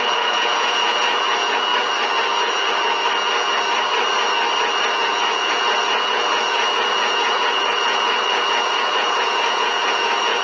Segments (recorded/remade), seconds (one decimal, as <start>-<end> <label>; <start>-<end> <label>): 0.0-1.7 remade; 1.7-4.8 recorded; 4.8-10.4 remade

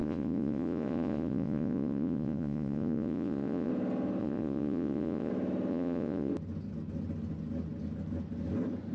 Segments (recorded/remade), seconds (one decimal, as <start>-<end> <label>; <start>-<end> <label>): 0.0-3.7 remade; 3.7-4.2 recorded; 4.2-5.3 remade; 5.3-5.7 recorded; 5.7-6.3 remade; 6.3-8.9 recorded

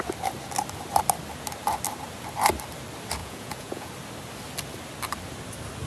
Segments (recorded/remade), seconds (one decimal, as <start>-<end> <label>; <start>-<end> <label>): 0.0-3.2 recorded; 3.2-3.9 remade; 3.9-5.9 recorded

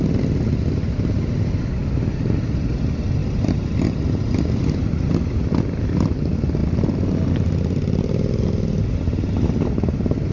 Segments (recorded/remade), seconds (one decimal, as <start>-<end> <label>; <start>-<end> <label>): 0.0-10.3 recorded

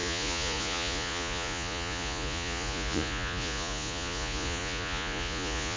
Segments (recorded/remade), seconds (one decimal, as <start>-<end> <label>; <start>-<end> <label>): 0.0-5.8 remade